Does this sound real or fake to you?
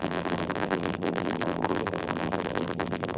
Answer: fake